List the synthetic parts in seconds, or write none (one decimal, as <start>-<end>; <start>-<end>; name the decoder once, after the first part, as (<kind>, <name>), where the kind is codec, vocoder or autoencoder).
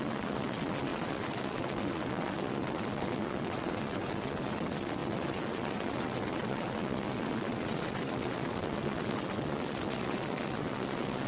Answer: 0.0-11.3 (vocoder, WaveNeXt)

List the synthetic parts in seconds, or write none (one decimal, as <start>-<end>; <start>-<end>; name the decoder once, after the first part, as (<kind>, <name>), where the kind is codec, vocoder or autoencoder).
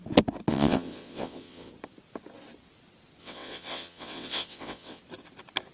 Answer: 0.5-1.7 (vocoder, WaveNeXt); 3.2-5.0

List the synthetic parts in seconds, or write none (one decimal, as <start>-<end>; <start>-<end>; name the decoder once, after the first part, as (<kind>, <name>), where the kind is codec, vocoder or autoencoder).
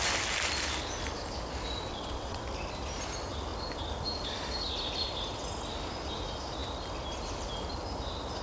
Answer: 1.9-2.4 (vocoder, WaveNeXt)